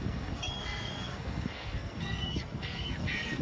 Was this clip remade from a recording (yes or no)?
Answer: yes